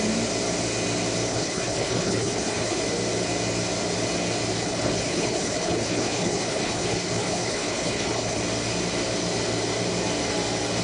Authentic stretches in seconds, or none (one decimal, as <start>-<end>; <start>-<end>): 0.0-1.3; 2.8-4.6; 8.4-10.8